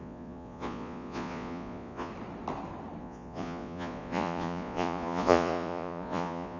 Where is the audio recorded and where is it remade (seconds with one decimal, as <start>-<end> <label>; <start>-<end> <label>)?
0.0-2.1 remade; 2.1-3.0 recorded; 3.0-6.6 remade